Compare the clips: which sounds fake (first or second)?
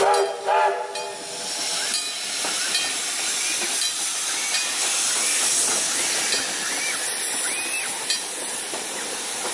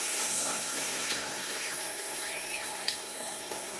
second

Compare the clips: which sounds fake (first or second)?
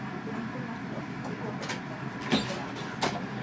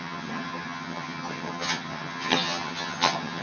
second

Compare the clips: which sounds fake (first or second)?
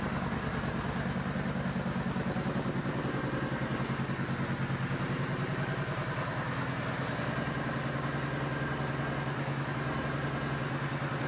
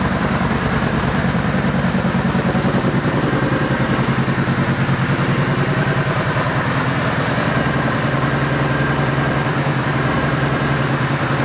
second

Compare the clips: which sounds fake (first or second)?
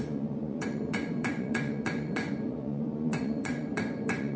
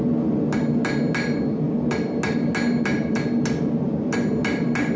first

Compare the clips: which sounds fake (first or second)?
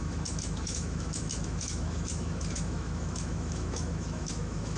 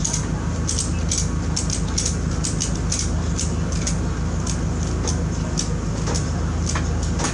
first